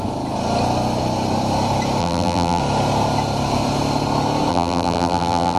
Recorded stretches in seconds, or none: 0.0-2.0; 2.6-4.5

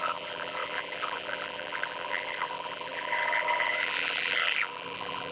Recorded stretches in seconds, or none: none

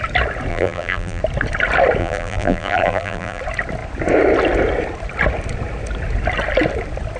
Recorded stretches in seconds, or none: 0.0-0.5; 1.2-2.0; 3.4-7.2